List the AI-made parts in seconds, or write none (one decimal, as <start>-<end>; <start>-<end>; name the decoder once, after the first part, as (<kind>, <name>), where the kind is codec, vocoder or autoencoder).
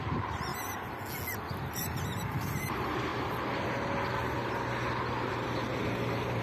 0.0-0.5 (vocoder, BigVGAN v2); 1.7-3.1; 5.3-6.4